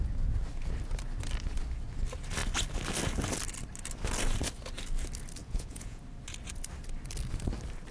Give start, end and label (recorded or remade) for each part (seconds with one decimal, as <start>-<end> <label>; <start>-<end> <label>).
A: 0.0-5.4 recorded; 5.4-6.0 remade; 6.0-7.9 recorded